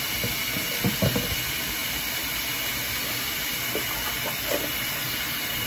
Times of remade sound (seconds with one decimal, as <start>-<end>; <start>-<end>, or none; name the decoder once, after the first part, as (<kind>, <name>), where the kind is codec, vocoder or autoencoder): none